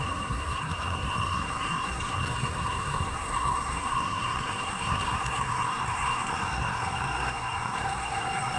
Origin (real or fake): fake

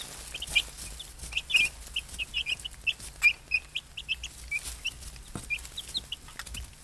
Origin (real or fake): real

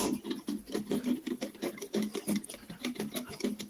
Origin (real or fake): real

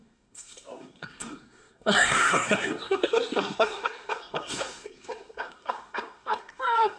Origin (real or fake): fake